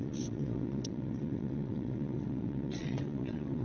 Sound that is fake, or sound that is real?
fake